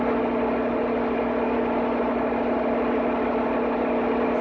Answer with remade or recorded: recorded